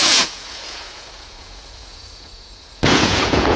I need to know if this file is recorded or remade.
remade